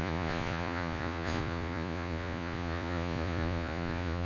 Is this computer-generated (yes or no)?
yes